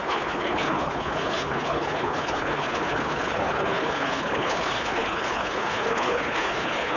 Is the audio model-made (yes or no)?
yes